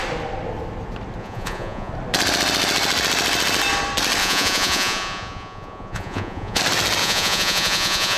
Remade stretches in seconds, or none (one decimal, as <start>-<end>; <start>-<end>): 1.2-1.9; 4.2-6.6; 7.0-8.2